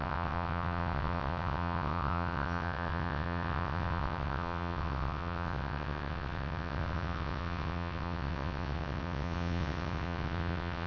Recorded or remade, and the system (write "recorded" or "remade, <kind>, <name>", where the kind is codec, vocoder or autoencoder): remade, vocoder, WaveNeXt